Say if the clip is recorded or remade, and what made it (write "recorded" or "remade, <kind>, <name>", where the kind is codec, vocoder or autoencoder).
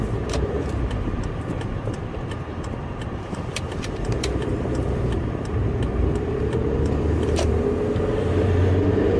remade, vocoder, BigVGAN v2